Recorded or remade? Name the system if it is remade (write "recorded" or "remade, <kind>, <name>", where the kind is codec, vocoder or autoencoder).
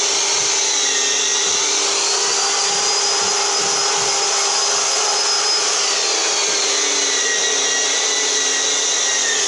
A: recorded